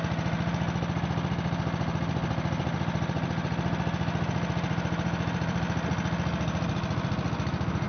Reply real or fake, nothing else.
real